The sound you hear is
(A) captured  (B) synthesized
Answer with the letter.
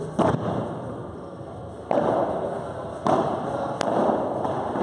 A